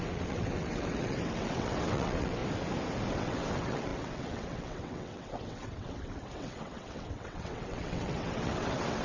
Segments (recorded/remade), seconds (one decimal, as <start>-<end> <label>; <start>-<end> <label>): 0.0-2.4 remade; 2.4-3.1 recorded; 3.1-9.0 remade